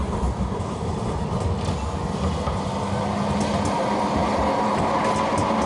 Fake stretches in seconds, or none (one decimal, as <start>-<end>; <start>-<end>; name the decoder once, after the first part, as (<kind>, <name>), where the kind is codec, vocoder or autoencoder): none